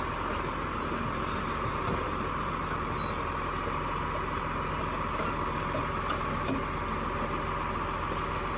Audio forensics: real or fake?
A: real